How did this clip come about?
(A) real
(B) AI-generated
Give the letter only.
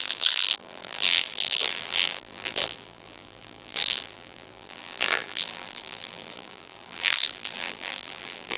B